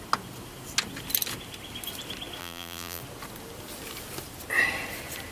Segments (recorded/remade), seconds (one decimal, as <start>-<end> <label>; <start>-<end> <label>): 0.0-2.4 recorded; 2.4-3.0 remade; 3.0-5.3 recorded